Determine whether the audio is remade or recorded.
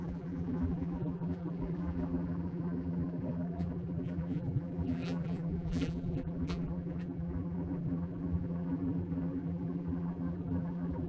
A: remade